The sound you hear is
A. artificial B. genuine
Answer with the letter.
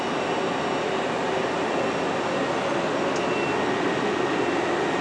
B